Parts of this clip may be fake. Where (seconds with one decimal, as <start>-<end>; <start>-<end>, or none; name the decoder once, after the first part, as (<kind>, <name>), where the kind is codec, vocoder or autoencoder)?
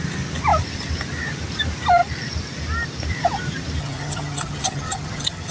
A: 3.8-5.5 (vocoder, HiFi-GAN)